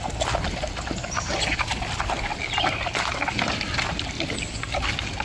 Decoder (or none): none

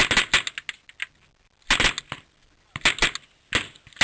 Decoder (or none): none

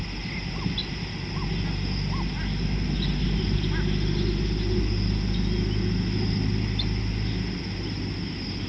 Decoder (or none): none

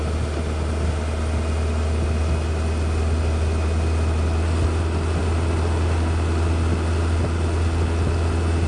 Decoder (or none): none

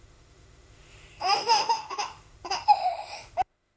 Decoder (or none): autoencoder, DAC-VAE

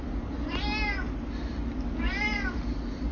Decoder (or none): none